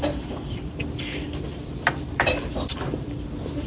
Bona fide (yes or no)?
no